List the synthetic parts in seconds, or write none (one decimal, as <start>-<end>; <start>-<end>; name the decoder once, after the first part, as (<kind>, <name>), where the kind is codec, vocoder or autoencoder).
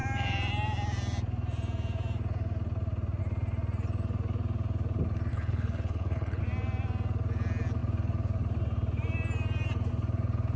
5.3-6.4 (codec, HILCodec)